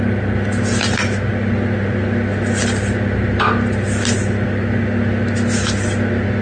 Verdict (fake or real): real